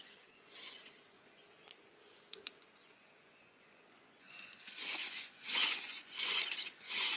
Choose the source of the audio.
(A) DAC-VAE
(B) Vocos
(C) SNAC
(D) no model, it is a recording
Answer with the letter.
B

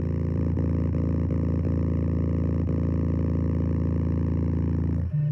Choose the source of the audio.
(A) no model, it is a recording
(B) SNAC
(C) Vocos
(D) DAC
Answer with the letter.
A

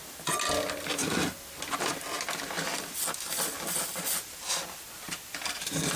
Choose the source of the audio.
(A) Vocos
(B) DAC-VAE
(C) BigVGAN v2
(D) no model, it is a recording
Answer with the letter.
D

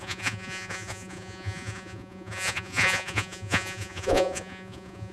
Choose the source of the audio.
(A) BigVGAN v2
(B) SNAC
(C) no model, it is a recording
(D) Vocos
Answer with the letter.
D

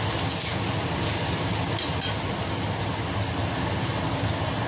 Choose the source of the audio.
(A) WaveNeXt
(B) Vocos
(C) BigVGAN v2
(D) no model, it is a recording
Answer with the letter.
D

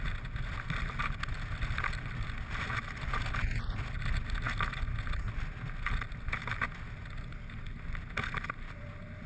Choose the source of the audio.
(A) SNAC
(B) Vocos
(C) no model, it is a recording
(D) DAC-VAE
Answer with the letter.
C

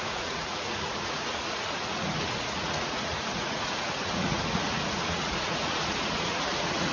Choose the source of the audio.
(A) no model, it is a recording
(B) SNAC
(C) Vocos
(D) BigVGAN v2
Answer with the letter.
C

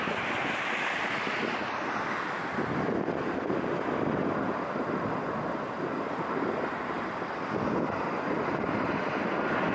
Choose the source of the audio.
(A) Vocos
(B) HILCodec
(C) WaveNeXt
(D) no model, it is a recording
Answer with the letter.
D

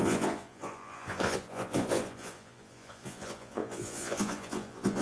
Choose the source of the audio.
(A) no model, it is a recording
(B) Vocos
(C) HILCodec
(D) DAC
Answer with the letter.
B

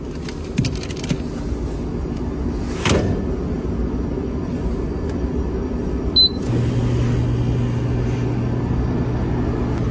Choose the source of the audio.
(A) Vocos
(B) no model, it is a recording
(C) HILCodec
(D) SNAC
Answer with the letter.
B